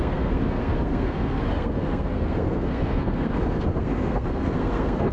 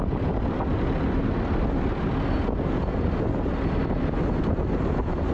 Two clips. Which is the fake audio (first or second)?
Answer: first